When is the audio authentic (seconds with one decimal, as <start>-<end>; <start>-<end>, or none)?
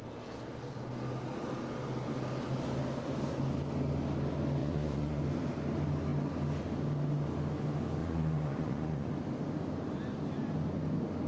0.0-4.6; 5.2-8.0; 9.1-11.3